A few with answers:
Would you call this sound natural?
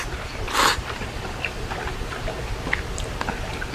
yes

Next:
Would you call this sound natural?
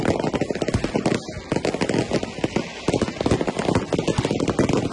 yes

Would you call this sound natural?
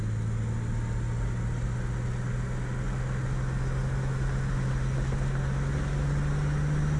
yes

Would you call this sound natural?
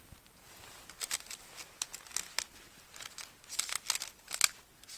yes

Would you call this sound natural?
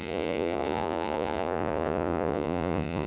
no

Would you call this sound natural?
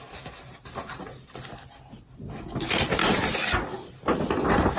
yes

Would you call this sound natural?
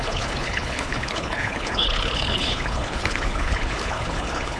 no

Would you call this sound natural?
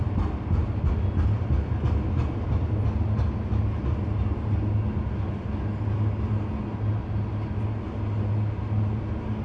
yes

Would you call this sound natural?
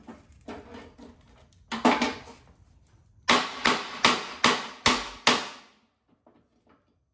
yes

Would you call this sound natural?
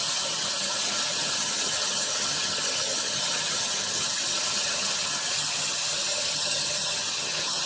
no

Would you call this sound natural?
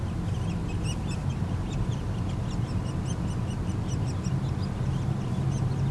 yes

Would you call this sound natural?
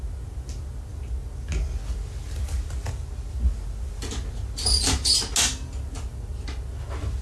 yes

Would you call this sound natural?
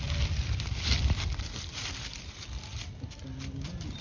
yes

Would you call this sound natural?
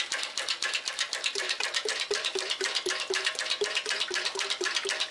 yes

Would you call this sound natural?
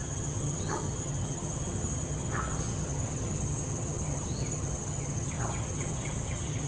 no